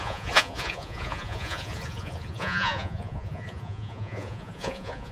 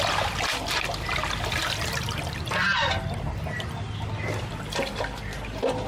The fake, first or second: first